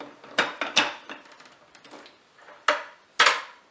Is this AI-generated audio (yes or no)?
no